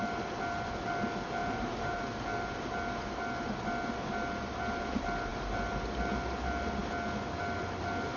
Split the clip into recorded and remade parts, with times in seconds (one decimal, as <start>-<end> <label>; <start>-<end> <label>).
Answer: 0.0-1.4 recorded; 1.4-2.0 remade; 2.0-8.2 recorded